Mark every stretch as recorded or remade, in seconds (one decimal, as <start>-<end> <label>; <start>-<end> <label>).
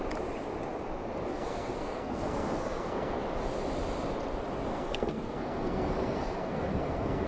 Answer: 0.0-1.3 recorded; 1.3-3.2 remade; 3.2-4.7 recorded; 4.7-7.3 remade